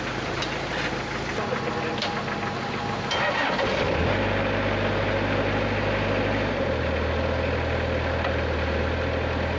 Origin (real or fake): real